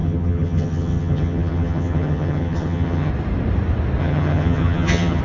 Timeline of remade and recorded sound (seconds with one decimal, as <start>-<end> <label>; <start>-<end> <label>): 0.0-3.1 remade; 3.1-4.0 recorded; 4.0-5.2 remade